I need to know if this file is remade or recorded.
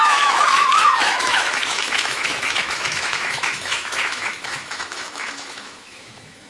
remade